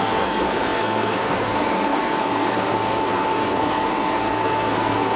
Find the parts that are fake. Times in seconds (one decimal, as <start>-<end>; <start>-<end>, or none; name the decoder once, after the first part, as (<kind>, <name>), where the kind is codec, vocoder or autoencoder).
0.0-5.2 (codec, SNAC)